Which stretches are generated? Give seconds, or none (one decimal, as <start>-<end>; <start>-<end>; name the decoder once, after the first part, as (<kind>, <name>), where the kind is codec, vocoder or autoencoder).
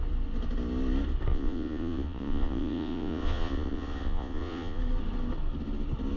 1.3-4.8 (vocoder, Vocos)